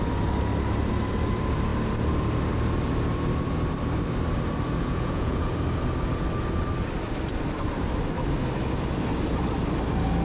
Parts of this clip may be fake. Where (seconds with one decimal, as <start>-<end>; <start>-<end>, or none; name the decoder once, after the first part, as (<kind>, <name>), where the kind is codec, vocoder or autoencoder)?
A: 4.8-5.5 (vocoder, Vocos)